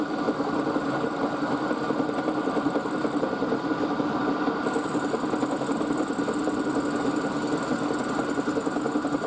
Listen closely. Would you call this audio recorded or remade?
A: recorded